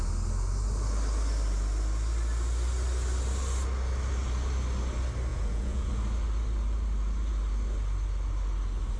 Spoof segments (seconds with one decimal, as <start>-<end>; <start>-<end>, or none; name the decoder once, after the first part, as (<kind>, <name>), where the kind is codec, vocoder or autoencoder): 5.3-5.9 (vocoder, Vocos)